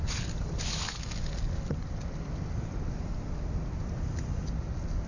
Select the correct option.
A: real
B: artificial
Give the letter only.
A